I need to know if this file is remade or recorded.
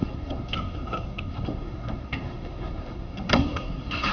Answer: remade